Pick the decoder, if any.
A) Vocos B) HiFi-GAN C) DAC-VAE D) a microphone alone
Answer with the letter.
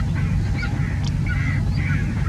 D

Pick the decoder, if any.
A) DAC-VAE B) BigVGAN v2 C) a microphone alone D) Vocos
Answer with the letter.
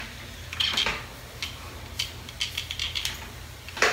C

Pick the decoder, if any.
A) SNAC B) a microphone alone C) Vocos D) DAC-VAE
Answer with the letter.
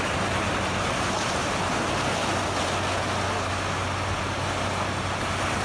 B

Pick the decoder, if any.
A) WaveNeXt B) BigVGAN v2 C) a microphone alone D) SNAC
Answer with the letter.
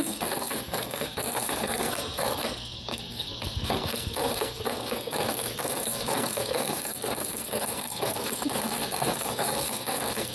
D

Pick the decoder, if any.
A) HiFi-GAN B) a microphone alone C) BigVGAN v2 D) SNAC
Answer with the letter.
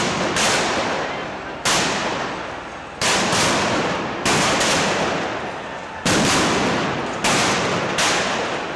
B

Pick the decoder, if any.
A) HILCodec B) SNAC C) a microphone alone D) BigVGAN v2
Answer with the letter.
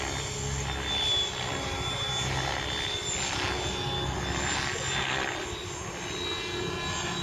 C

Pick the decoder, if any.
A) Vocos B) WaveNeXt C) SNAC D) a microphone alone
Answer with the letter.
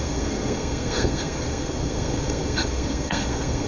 C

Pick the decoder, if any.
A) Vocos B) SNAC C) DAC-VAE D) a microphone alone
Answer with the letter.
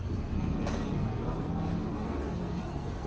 B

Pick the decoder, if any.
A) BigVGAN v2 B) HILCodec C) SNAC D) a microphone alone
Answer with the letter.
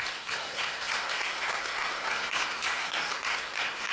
C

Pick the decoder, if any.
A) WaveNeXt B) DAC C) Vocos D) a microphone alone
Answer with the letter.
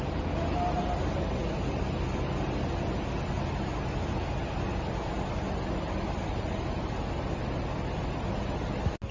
D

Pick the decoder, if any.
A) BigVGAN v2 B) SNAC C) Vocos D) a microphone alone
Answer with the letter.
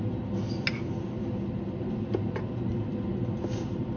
D